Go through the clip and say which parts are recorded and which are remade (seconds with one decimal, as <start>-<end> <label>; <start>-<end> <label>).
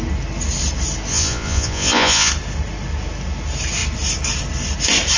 0.0-1.1 recorded; 1.1-2.3 remade; 2.3-5.2 recorded